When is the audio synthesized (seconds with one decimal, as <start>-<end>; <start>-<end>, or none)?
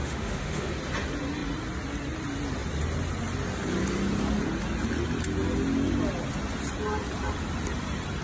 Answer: 0.0-0.7